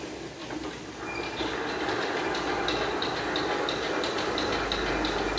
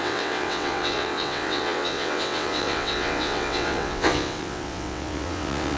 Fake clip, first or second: second